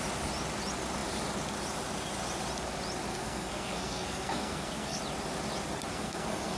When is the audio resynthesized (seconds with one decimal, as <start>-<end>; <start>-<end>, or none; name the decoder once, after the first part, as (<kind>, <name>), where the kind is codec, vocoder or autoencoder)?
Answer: 3.1-5.0 (codec, SNAC); 5.9-6.6